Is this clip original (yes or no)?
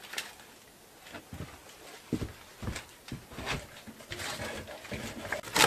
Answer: yes